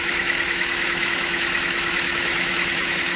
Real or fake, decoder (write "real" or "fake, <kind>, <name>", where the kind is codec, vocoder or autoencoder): fake, autoencoder, DAC-VAE